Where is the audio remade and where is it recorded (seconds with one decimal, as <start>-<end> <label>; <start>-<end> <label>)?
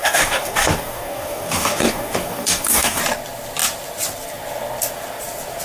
0.0-3.0 remade; 3.0-5.6 recorded